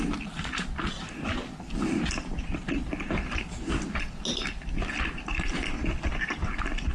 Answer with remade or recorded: recorded